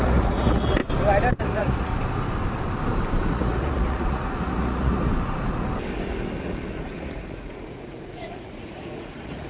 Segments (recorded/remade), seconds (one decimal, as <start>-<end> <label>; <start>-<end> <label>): 0.0-0.8 remade; 0.8-1.4 recorded; 1.4-1.9 remade; 1.9-3.3 recorded; 3.3-5.1 remade; 5.1-6.4 recorded; 6.4-9.5 remade